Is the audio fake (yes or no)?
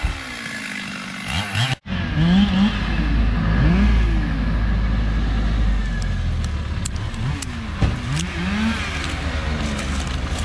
no